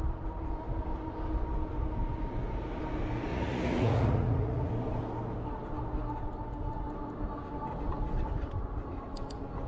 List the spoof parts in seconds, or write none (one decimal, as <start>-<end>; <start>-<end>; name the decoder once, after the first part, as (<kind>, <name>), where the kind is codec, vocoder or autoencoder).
3.3-4.7 (vocoder, Vocos)